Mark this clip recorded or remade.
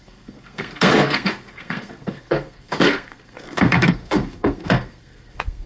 remade